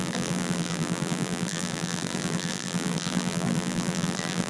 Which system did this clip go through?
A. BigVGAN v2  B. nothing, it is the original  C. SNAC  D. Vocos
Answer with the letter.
A